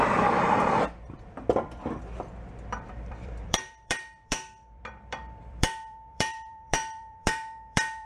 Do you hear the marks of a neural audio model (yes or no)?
yes